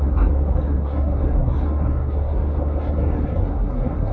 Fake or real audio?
fake